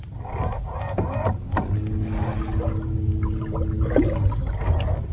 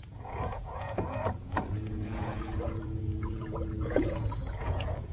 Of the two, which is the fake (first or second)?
second